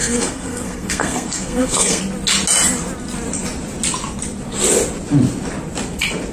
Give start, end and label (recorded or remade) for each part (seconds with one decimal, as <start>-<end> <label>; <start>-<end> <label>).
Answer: 0.0-2.0 remade; 2.0-6.3 recorded